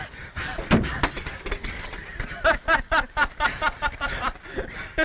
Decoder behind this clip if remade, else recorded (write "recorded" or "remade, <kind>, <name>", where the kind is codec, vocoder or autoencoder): recorded